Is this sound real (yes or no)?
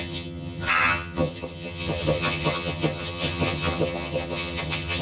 no